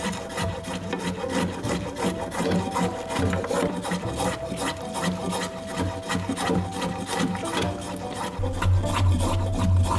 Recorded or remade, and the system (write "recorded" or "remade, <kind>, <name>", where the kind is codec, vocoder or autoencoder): recorded